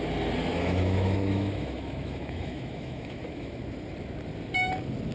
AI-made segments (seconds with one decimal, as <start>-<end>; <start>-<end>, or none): 0.5-3.6